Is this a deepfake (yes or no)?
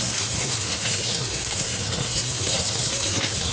yes